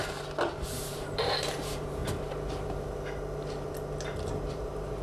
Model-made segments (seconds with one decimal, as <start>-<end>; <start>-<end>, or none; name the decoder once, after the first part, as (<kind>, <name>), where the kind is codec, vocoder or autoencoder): 0.8-2.0 (vocoder, BigVGAN v2); 4.5-5.0